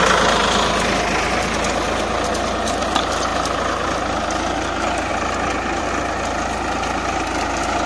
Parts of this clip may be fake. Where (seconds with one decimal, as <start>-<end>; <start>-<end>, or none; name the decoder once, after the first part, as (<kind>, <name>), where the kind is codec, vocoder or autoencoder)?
none